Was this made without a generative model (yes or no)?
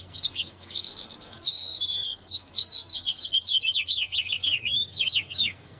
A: no